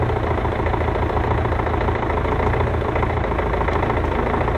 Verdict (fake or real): real